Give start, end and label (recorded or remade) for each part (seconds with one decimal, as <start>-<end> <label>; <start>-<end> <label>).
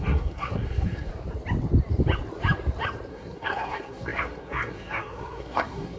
0.0-1.1 remade; 1.1-3.1 recorded; 3.1-6.0 remade